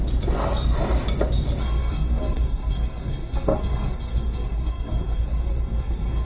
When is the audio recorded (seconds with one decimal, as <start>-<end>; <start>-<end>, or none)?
0.0-1.6